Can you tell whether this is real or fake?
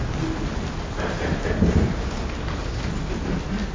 real